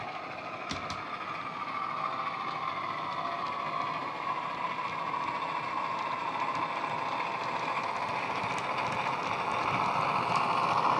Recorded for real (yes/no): yes